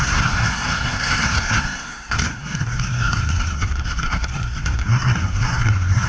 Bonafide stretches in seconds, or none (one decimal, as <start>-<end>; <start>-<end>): none